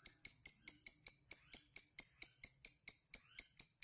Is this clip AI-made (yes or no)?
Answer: no